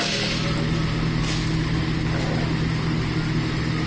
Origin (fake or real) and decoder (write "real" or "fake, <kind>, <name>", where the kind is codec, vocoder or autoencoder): real